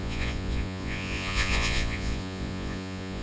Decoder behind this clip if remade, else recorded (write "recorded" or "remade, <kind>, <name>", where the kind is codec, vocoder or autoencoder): remade, vocoder, Vocos